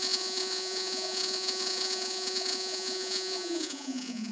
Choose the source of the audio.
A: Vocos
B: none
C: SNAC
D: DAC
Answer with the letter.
A